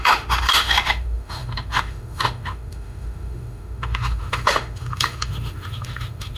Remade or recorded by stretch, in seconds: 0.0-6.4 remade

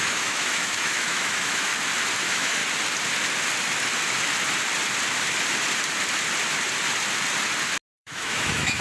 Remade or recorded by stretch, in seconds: 0.0-1.7 remade; 1.7-2.2 recorded; 2.2-2.6 remade; 2.6-7.9 recorded; 7.9-8.8 remade

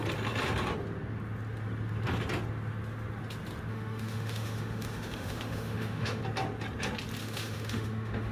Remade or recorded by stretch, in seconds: 0.0-3.7 recorded; 3.7-6.2 remade; 6.2-7.2 recorded; 7.2-8.3 remade

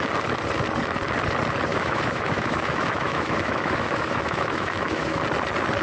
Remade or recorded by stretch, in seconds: 0.0-1.7 recorded; 1.7-5.2 remade; 5.2-5.8 recorded